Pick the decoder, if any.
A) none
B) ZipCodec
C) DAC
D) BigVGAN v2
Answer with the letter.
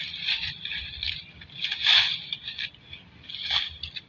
A